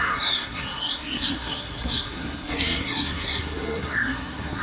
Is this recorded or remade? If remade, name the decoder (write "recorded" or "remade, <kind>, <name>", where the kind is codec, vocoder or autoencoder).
remade, codec, SNAC